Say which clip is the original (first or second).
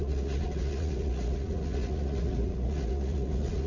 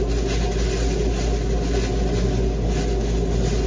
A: second